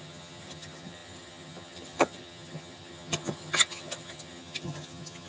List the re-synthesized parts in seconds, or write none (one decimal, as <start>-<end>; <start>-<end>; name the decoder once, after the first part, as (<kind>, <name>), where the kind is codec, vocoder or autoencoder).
0.0-5.3 (vocoder, HiFi-GAN)